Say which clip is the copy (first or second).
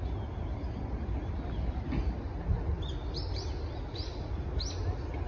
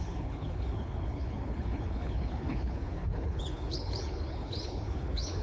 second